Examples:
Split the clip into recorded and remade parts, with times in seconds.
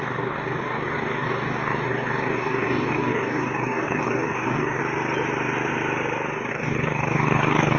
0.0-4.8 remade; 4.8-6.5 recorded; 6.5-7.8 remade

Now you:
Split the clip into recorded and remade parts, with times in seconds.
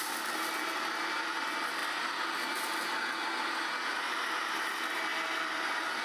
0.0-6.0 recorded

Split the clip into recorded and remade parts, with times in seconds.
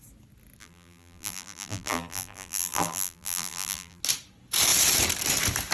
0.0-0.6 recorded; 0.6-4.0 remade; 4.0-5.7 recorded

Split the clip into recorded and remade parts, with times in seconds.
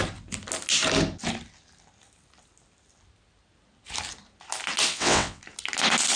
0.0-4.9 recorded; 4.9-5.4 remade; 5.4-6.2 recorded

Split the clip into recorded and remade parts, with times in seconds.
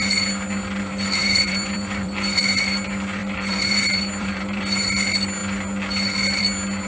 0.0-1.2 recorded; 1.2-2.4 remade; 2.4-3.2 recorded; 3.2-4.6 remade; 4.6-6.9 recorded